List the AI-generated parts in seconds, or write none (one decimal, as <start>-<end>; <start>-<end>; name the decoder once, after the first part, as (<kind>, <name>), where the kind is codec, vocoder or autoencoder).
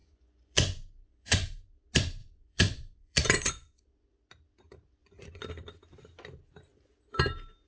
0.0-1.7 (vocoder, Vocos); 2.2-3.8; 5.0-5.5